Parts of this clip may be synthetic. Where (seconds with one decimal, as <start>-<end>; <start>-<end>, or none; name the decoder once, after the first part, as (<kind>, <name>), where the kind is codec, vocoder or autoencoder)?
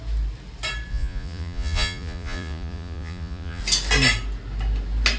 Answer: 0.9-3.6 (vocoder, Vocos)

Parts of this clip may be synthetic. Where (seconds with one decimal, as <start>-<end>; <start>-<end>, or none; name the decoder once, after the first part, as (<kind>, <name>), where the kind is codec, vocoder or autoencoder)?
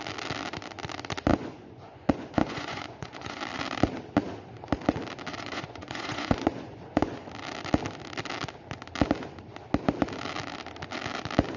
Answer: 1.3-3.4 (vocoder, Vocos); 5.3-7.3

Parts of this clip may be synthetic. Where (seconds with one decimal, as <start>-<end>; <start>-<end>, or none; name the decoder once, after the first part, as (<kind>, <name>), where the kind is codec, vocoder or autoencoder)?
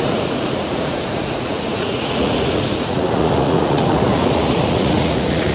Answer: 0.0-5.5 (vocoder, Vocos)